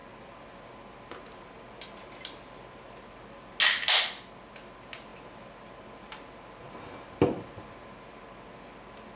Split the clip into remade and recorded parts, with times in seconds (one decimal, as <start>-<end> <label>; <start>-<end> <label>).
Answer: 0.0-9.2 recorded

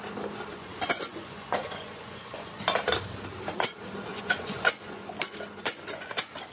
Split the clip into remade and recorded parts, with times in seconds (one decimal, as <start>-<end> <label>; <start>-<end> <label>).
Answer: 0.0-0.5 recorded; 0.5-2.5 remade; 2.5-4.1 recorded; 4.1-6.1 remade; 6.1-6.5 recorded

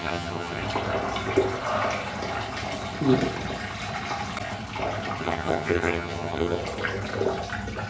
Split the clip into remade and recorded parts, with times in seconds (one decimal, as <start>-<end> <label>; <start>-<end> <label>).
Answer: 0.0-0.6 remade; 0.6-5.2 recorded; 5.2-6.6 remade; 6.6-7.9 recorded

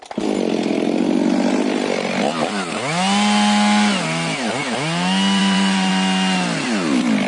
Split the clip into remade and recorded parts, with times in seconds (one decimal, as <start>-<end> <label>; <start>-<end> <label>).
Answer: 0.0-5.4 recorded; 5.4-5.9 remade; 5.9-7.3 recorded

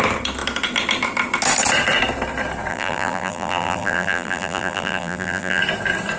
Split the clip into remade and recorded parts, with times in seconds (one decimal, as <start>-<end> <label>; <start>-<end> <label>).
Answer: 0.0-2.7 recorded; 2.7-5.6 remade; 5.6-6.2 recorded